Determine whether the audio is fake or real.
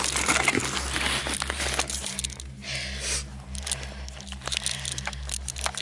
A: real